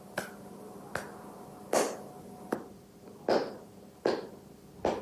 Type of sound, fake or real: real